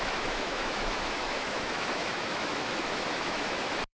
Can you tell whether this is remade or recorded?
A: remade